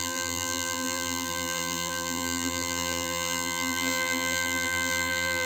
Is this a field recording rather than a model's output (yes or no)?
no